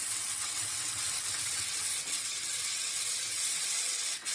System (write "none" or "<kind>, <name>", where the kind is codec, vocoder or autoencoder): vocoder, WaveNeXt